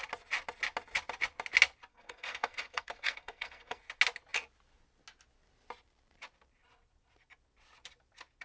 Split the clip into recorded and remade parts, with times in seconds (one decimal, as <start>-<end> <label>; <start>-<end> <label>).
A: 0.0-1.9 recorded; 1.9-3.8 remade; 3.8-8.4 recorded